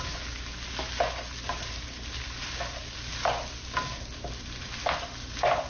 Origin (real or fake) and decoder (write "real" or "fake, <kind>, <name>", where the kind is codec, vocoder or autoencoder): real